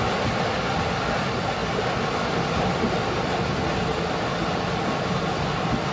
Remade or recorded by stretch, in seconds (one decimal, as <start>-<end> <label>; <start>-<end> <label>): 0.0-5.9 recorded